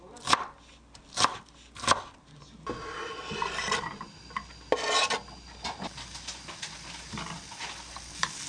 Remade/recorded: recorded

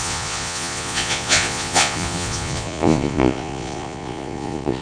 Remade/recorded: remade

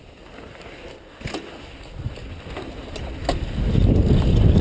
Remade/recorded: recorded